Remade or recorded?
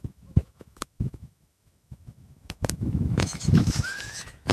remade